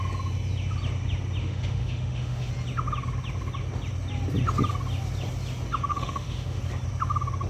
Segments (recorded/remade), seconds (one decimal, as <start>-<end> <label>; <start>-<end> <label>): 0.0-1.4 recorded; 1.4-2.5 remade; 2.5-5.9 recorded; 5.9-6.6 remade; 6.6-7.5 recorded